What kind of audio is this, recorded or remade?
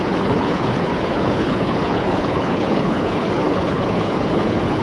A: remade